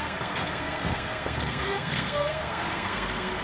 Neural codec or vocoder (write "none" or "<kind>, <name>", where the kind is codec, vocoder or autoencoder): codec, SNAC